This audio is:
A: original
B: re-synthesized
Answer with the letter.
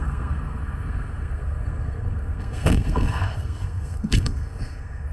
B